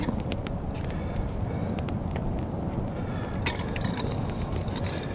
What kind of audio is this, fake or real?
real